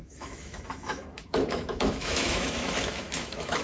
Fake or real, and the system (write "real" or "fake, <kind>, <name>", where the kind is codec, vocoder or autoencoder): fake, autoencoder, DAC-VAE